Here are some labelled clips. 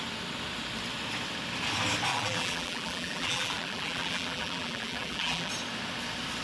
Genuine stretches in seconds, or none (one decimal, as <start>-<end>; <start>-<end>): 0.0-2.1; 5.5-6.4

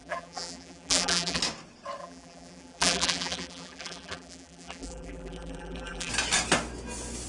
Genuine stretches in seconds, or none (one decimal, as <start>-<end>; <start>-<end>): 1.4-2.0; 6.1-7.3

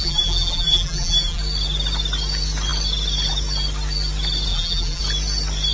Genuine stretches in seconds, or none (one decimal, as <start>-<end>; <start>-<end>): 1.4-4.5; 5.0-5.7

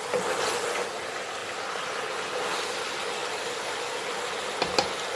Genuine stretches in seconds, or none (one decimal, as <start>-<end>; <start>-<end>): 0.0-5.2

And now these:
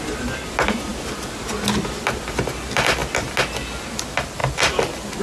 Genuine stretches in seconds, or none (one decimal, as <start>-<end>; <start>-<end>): 0.0-5.2

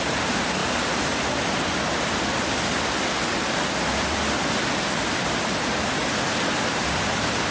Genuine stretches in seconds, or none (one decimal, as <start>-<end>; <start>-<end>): 0.6-5.1; 6.0-6.7

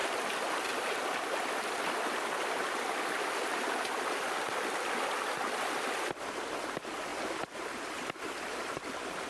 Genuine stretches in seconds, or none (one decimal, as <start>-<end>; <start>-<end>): 0.0-1.5; 3.5-5.5; 7.1-8.7